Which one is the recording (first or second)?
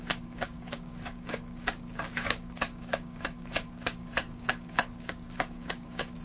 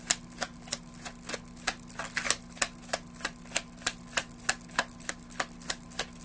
second